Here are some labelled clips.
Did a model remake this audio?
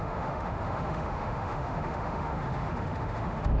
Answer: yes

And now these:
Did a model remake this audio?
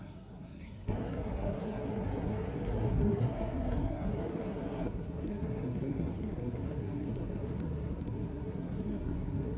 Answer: yes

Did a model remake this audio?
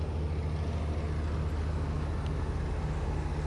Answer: no